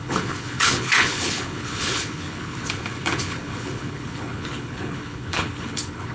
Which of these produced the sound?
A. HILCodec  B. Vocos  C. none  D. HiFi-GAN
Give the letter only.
A